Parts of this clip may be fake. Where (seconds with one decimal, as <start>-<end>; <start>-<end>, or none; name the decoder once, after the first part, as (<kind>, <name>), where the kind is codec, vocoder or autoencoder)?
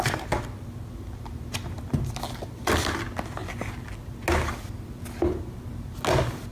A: none